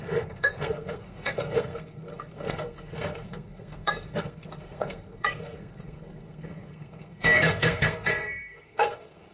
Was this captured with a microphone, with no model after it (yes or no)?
no